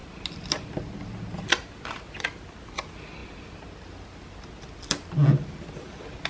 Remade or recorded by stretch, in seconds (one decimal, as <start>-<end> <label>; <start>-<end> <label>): 0.0-6.3 recorded